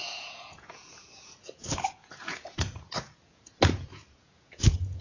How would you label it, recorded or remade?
remade